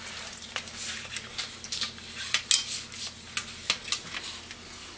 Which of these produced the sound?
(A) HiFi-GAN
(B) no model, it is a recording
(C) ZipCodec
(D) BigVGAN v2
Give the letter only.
B